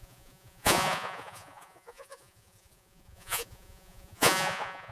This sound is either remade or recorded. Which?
remade